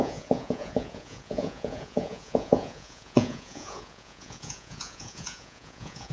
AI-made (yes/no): yes